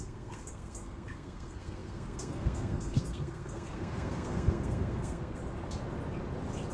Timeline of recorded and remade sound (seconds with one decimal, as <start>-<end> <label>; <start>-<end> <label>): 0.0-5.4 remade; 5.4-6.7 recorded